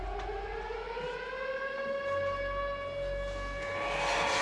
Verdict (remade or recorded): recorded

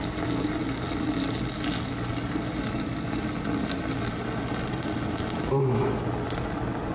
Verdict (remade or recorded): recorded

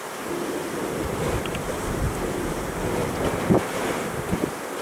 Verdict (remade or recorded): remade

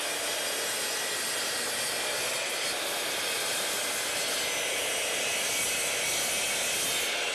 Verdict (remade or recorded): recorded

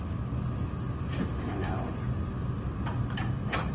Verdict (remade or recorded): recorded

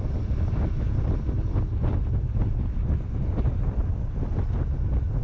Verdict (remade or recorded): recorded